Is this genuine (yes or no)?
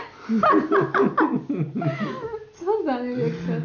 yes